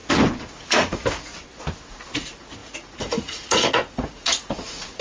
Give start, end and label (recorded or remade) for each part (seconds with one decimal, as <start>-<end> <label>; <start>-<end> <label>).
0.0-0.5 recorded; 0.5-1.3 remade; 1.3-1.9 recorded; 1.9-5.0 remade